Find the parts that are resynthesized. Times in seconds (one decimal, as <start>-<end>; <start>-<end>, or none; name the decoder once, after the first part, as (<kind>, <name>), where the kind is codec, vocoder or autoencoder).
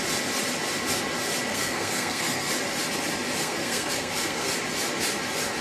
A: 1.5-2.5 (codec, SNAC); 3.4-4.5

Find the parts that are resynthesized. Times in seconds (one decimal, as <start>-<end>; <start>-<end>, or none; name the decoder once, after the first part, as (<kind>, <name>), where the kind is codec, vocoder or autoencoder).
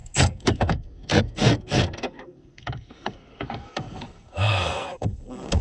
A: 0.0-5.6 (codec, SNAC)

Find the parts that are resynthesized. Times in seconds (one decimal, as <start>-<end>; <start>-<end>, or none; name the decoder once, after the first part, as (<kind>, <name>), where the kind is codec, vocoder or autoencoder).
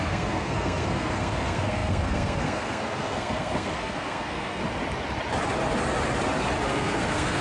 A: 0.0-4.6 (codec, SNAC); 6.7-7.4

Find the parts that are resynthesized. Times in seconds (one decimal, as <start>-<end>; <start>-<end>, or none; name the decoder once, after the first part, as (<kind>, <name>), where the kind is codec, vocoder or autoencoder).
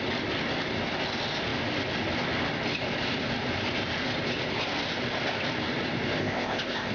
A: 6.2-6.9 (codec, ZipCodec)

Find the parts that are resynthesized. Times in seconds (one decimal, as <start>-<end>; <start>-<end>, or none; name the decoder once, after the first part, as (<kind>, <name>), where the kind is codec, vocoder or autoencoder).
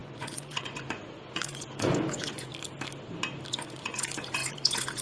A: 0.0-2.5 (vocoder, Vocos); 3.5-5.0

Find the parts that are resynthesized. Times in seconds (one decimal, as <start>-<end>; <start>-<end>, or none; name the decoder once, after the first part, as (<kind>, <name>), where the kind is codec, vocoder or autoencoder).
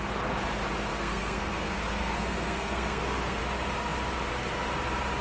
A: 0.9-3.4 (codec, SNAC)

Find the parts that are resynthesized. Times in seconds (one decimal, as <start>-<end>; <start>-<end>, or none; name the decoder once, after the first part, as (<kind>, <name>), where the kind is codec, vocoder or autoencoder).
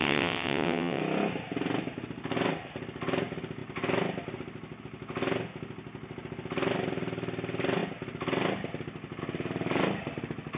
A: 0.0-1.0 (vocoder, WaveNeXt)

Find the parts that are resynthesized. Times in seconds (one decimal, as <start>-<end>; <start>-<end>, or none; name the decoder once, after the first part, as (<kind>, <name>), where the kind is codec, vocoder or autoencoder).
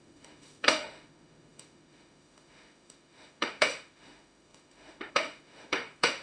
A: 0.0-6.2 (autoencoder, DAC-VAE)